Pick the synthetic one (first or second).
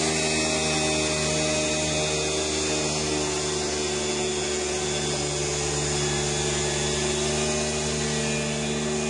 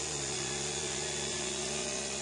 second